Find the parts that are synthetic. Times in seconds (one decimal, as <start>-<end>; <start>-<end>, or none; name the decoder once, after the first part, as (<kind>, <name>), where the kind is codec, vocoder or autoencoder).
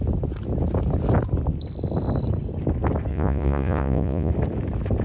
3.1-4.3 (vocoder, Vocos)